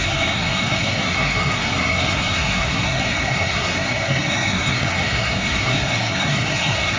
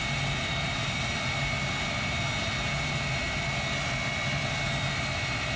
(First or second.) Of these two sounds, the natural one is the second